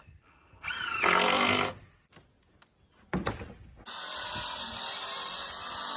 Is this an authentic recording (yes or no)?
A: yes